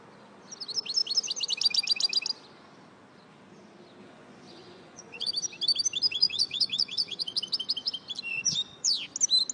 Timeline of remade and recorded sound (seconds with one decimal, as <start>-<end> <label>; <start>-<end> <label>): 0.0-4.0 recorded; 4.0-5.3 remade; 5.3-6.2 recorded; 6.2-7.4 remade; 7.4-8.3 recorded; 8.3-8.9 remade; 8.9-9.5 recorded